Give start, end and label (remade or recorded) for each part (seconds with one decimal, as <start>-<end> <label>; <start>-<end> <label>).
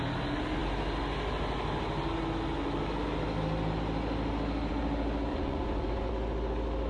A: 0.0-5.3 recorded; 5.3-6.1 remade; 6.1-6.9 recorded